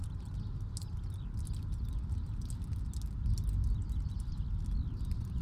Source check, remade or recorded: recorded